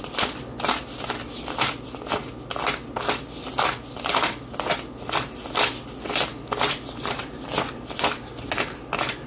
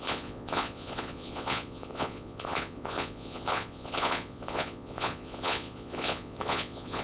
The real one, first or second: first